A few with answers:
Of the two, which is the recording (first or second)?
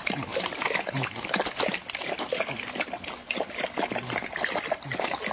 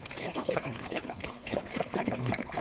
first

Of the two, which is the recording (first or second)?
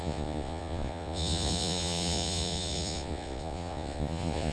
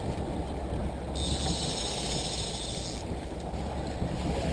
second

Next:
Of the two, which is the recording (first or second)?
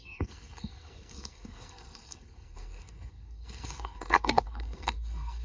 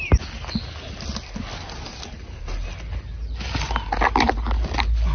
second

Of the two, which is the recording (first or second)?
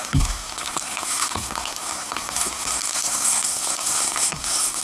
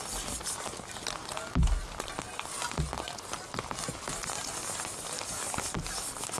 second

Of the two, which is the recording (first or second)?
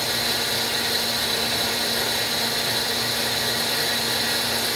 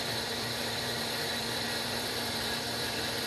first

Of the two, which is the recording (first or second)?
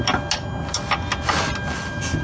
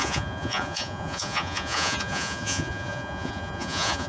first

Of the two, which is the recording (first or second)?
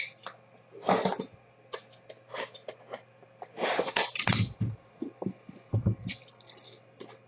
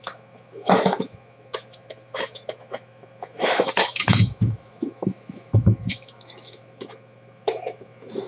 first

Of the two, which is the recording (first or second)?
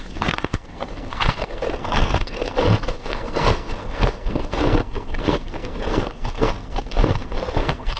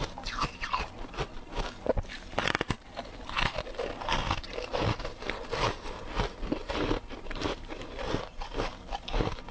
second